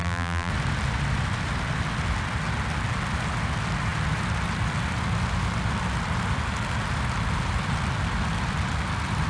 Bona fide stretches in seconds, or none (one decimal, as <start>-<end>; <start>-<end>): 0.5-9.3

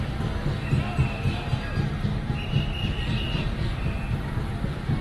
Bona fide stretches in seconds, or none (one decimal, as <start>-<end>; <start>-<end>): 0.0-0.9; 1.6-2.8

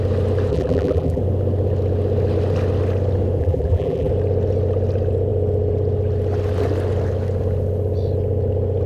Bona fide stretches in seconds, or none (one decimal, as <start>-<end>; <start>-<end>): 0.0-0.5; 1.2-3.4; 4.1-8.9

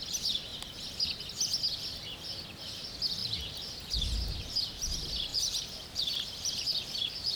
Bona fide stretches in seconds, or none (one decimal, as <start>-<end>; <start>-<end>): 0.0-3.2; 4.6-5.3

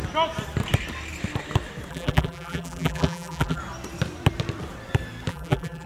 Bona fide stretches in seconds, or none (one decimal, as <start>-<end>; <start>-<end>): 0.0-1.9; 3.6-5.3

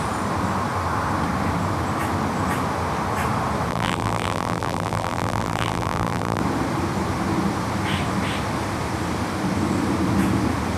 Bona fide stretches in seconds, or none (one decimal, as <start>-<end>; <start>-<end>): 0.0-3.7; 6.4-10.8